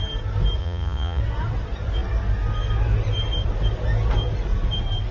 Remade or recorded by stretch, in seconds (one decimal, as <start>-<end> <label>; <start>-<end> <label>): 0.0-0.6 recorded; 0.6-1.2 remade; 1.2-5.1 recorded